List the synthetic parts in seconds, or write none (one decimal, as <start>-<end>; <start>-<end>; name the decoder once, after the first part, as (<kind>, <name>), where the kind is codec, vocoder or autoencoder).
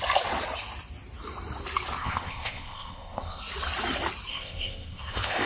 2.0-3.4 (codec, ZipCodec); 4.3-5.5